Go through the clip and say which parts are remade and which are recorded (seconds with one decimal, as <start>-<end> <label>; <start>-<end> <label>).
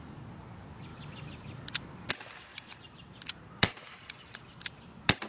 0.0-2.5 recorded; 2.5-4.4 remade; 4.4-5.3 recorded